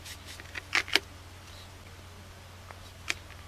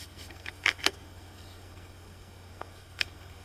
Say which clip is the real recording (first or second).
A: first